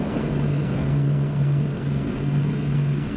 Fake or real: fake